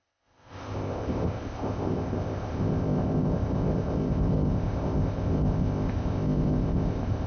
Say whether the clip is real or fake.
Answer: fake